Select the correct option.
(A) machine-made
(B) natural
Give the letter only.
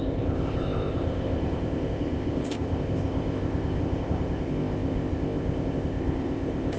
A